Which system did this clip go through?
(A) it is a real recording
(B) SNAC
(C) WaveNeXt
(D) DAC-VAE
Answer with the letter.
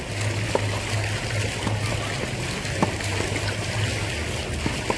A